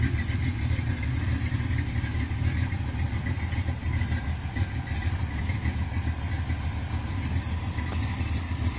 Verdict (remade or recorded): remade